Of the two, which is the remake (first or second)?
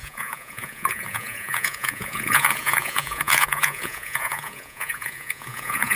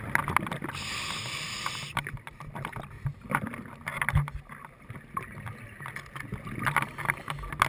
first